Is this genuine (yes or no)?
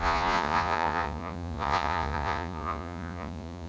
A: no